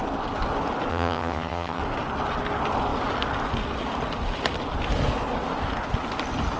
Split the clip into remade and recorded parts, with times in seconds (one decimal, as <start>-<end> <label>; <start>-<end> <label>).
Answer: 0.0-0.9 recorded; 0.9-1.8 remade; 1.8-6.6 recorded

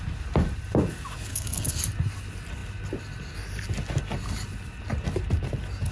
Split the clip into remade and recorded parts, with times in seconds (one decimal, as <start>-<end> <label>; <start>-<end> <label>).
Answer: 0.0-1.3 recorded; 1.3-1.8 remade; 1.8-5.9 recorded

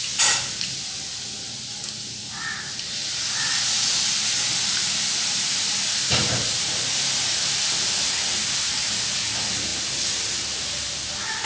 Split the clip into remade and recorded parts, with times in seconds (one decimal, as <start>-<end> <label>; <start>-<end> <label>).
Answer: 0.0-11.5 recorded

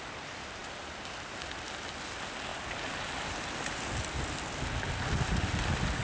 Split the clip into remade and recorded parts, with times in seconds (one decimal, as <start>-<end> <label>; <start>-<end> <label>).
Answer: 0.0-6.0 recorded

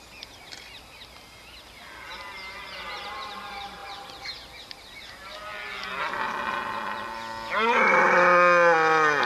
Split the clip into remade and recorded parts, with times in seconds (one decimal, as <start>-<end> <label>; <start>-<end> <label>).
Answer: 0.0-9.3 recorded

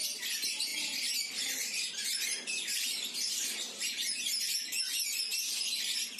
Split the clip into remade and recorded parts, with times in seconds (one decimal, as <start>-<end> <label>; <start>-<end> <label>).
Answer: 0.0-0.7 recorded; 0.7-4.4 remade; 4.4-5.3 recorded; 5.3-6.2 remade